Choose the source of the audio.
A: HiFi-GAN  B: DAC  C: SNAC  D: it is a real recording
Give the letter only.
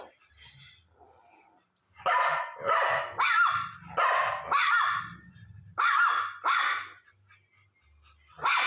D